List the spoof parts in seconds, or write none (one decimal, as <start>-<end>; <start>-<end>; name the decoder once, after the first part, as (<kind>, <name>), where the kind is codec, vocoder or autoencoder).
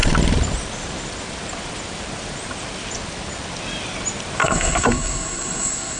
4.4-6.0 (codec, SNAC)